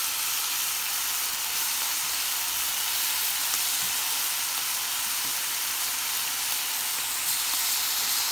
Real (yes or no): yes